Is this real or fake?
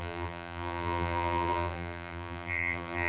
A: fake